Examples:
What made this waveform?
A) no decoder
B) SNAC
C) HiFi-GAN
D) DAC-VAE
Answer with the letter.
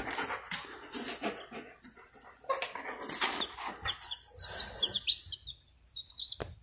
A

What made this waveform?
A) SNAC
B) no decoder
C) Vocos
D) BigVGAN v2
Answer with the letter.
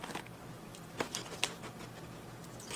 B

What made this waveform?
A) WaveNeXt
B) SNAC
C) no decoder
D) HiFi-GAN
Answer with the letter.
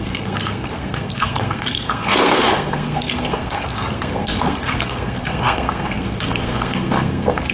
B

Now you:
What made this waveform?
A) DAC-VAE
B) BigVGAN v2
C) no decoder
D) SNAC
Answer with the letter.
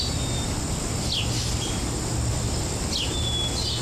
C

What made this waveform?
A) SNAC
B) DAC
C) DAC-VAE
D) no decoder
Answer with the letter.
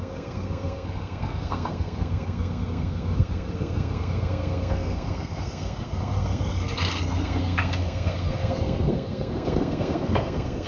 A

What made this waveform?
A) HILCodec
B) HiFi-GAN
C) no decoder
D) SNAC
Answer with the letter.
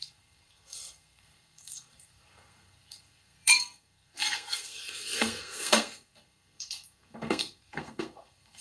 D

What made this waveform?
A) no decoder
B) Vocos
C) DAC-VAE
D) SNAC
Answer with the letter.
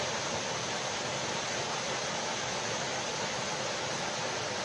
A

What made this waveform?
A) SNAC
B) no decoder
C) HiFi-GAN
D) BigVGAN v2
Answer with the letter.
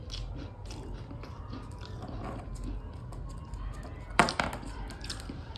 B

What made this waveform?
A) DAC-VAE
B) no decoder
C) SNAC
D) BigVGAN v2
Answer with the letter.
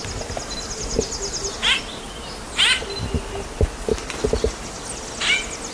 B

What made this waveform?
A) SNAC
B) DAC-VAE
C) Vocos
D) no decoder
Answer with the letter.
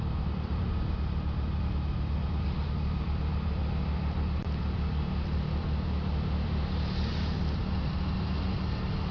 D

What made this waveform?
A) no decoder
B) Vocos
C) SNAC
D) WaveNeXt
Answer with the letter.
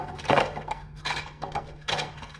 C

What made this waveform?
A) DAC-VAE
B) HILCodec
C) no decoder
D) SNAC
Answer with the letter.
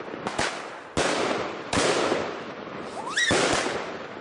C